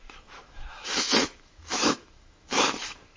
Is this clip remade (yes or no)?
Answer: yes